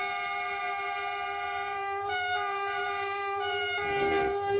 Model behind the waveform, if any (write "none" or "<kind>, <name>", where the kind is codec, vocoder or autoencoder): vocoder, BigVGAN v2